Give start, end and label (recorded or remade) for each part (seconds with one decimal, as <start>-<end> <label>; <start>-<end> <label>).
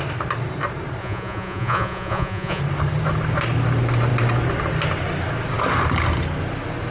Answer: 0.0-1.0 recorded; 1.0-2.6 remade; 2.6-6.9 recorded